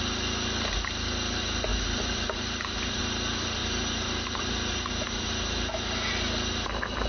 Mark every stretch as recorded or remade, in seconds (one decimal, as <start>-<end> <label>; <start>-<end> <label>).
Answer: 0.0-1.7 recorded; 1.7-3.0 remade; 3.0-3.6 recorded; 3.6-5.7 remade; 5.7-7.1 recorded